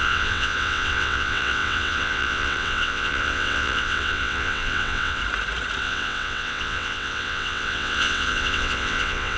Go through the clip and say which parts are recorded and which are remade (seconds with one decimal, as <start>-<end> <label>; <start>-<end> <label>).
0.0-5.2 remade; 5.2-5.8 recorded; 5.8-9.4 remade